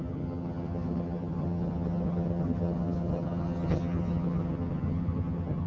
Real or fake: fake